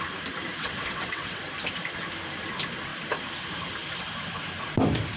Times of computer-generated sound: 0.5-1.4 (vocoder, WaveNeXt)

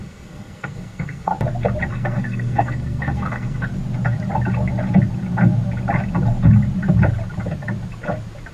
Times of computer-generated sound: 0.0-1.3 (codec, SNAC); 1.9-3.7